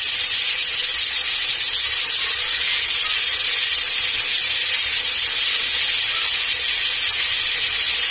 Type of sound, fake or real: real